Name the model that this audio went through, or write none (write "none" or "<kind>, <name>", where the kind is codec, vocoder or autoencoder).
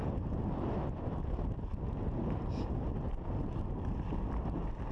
none